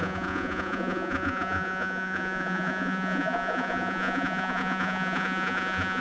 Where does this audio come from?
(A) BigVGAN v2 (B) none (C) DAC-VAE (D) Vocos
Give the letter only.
D